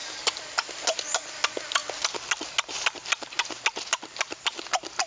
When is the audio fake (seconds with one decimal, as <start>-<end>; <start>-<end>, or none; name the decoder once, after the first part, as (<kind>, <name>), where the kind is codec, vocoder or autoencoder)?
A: none